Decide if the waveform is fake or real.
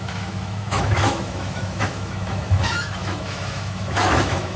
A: fake